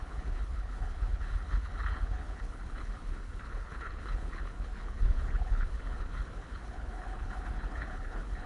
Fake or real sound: fake